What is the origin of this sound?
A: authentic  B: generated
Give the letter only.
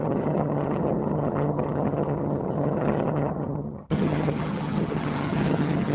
B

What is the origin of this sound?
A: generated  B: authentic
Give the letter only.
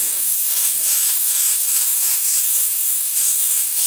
A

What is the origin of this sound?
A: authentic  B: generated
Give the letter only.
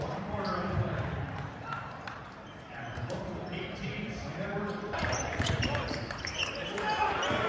B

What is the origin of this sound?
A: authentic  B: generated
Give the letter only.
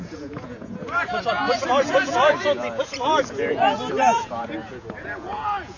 B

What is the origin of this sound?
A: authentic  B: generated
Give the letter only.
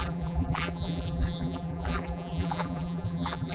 B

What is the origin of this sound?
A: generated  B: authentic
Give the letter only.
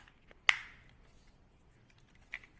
B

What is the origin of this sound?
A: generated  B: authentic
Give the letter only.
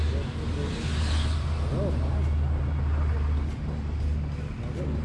B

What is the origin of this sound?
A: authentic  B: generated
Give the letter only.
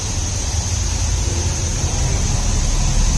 A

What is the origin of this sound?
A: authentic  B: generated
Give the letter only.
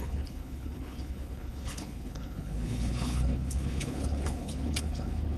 B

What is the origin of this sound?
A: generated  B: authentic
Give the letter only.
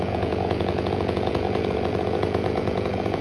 A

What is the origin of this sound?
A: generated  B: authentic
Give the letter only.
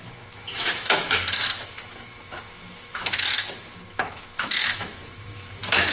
A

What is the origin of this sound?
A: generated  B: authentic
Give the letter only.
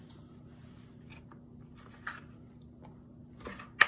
B